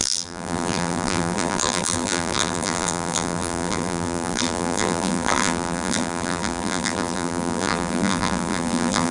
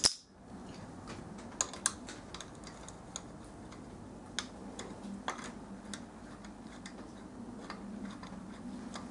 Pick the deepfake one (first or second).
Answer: first